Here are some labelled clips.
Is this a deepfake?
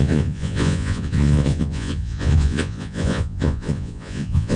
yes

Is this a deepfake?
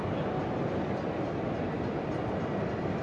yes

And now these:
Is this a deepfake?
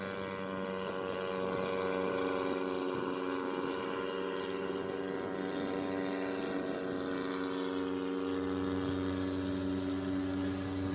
no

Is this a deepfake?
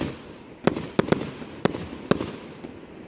no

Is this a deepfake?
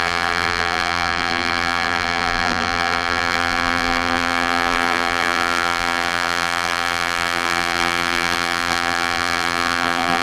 yes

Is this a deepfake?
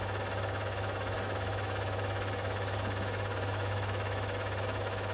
yes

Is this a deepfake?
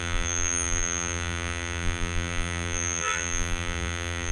yes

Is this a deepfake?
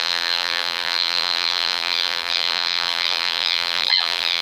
yes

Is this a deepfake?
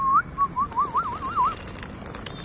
no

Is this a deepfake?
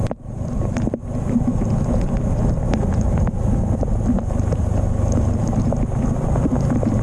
no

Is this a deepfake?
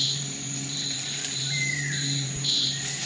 yes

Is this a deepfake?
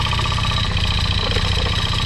no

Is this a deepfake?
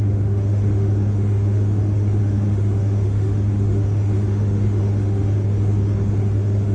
yes